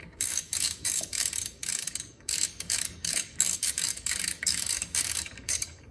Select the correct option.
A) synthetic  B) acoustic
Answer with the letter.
A